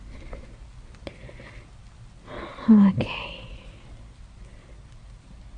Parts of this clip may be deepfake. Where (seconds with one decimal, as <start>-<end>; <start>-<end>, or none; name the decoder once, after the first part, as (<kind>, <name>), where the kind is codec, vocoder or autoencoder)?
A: none